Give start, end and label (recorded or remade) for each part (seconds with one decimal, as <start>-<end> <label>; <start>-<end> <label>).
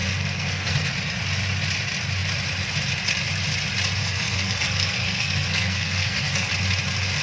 0.0-0.9 remade; 0.9-4.0 recorded; 4.0-6.5 remade; 6.5-7.2 recorded